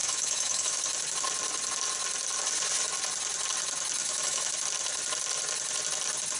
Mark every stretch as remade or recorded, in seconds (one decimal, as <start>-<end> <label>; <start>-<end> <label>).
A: 0.0-0.8 remade; 0.8-4.0 recorded; 4.0-4.5 remade; 4.5-6.4 recorded